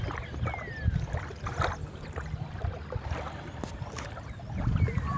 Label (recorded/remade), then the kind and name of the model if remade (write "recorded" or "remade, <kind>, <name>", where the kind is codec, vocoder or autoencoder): recorded